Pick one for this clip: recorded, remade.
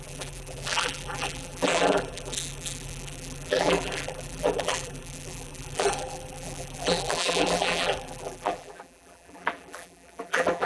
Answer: remade